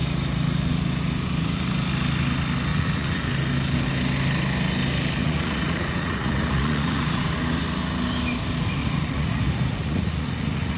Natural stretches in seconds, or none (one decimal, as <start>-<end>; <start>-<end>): 0.0-2.7; 3.2-5.2; 7.4-8.8

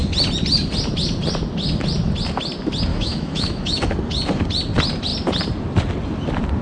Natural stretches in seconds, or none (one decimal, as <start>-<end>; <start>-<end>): 0.0-2.9; 3.9-6.6